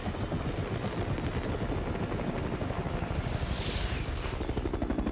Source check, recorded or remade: recorded